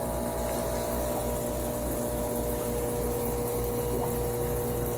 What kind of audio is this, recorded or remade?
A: recorded